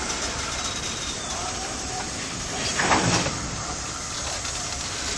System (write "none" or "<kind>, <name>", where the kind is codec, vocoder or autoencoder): vocoder, BigVGAN v2